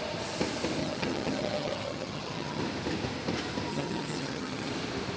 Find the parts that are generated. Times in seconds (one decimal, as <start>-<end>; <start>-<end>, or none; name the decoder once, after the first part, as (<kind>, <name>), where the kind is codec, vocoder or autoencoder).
0.8-2.6 (vocoder, HiFi-GAN); 3.7-4.7